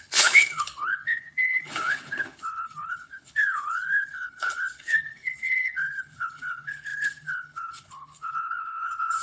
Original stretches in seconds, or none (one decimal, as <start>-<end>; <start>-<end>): none